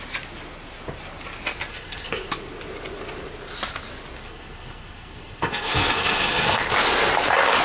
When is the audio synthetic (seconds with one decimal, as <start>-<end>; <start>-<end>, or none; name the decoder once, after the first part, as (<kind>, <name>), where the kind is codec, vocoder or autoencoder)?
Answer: 1.7-2.3 (codec, SNAC); 4.2-6.6